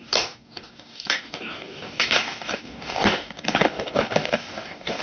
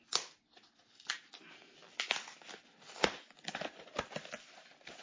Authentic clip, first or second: second